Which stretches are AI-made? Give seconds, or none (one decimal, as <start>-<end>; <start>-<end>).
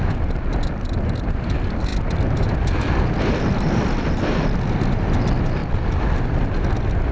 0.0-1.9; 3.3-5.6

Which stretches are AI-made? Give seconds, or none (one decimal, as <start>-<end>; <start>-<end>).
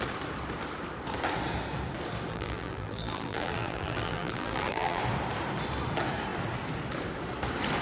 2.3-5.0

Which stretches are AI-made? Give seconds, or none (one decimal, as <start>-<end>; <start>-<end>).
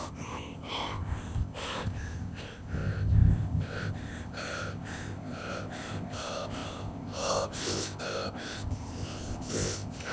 0.0-10.1